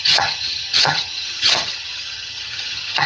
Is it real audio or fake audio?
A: fake